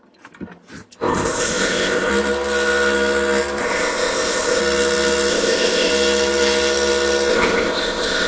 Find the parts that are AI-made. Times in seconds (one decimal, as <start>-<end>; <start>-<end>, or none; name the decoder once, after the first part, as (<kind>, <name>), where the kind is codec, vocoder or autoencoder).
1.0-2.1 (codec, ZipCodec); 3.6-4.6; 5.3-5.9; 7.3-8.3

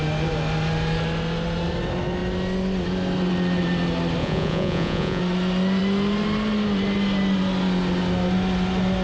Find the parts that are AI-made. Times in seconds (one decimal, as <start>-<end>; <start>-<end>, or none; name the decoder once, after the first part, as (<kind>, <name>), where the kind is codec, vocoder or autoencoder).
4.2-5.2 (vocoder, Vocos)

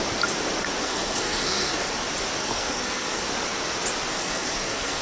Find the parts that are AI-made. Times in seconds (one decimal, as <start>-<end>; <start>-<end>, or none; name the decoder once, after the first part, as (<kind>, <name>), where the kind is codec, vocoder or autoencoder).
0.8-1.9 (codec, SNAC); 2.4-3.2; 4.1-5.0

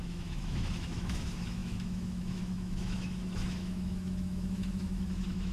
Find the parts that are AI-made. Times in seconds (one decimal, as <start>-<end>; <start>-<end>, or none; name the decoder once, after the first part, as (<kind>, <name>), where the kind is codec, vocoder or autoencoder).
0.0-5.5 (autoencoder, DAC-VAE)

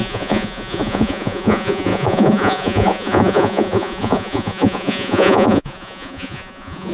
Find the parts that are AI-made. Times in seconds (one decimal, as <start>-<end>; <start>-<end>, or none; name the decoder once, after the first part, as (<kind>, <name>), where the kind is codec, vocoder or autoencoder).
0.0-6.9 (vocoder, Vocos)

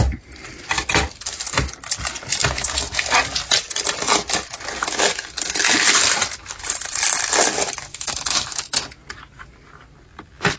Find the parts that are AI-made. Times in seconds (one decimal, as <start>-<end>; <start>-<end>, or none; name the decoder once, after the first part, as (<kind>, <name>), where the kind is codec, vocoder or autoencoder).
7.9-9.0 (autoencoder, DAC-VAE)

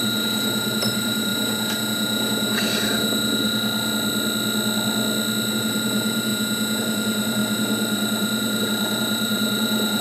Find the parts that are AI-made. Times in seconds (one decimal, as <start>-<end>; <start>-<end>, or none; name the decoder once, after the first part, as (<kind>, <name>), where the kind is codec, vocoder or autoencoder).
0.0-1.3 (vocoder, BigVGAN v2); 5.5-6.3; 6.8-10.0